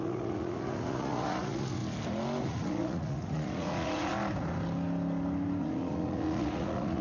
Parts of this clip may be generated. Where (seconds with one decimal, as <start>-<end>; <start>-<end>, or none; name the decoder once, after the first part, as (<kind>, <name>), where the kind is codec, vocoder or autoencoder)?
0.0-1.8 (vocoder, Vocos); 2.4-4.1; 5.6-7.0